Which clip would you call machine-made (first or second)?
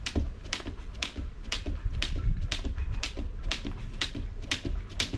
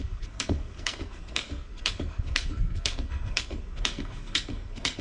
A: second